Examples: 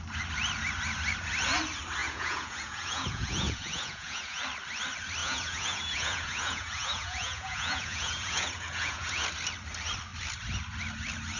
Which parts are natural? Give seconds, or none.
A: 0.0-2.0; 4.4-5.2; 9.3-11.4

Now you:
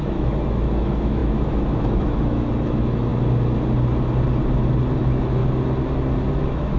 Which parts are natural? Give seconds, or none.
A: 3.1-5.0; 5.4-6.3

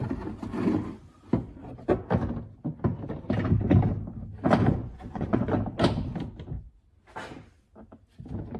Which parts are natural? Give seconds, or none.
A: 0.0-4.8; 5.5-8.6